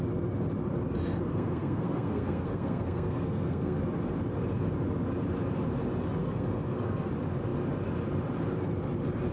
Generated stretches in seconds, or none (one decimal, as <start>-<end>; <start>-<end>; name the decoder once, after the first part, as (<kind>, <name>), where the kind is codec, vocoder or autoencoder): 1.3-3.8 (codec, SNAC); 6.2-7.1